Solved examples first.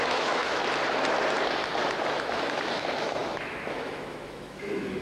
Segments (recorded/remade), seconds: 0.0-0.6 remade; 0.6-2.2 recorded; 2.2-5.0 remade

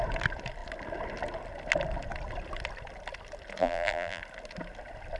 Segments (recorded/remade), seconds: 0.0-3.6 recorded; 3.6-4.2 remade; 4.2-5.2 recorded

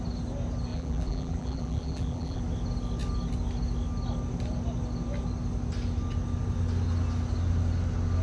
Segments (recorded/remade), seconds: 0.0-0.7 recorded; 0.7-2.4 remade; 2.4-8.2 recorded

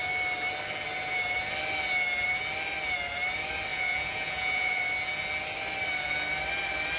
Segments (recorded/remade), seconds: 0.0-3.7 recorded; 3.7-4.8 remade; 4.8-7.0 recorded

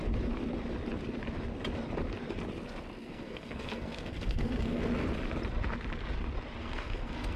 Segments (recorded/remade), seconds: 0.0-3.0 recorded; 3.0-4.8 remade; 4.8-6.6 recorded; 6.6-7.4 remade

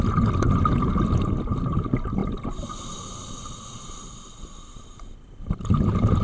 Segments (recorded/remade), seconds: 0.0-6.2 remade

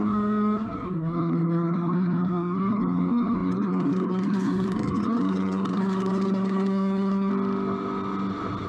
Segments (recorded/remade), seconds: 0.0-7.3 remade; 7.3-8.7 recorded

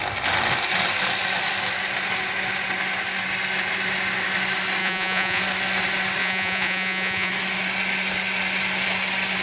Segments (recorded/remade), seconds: 0.0-4.8 recorded; 4.8-5.4 remade; 5.4-6.2 recorded; 6.2-7.3 remade; 7.3-9.4 recorded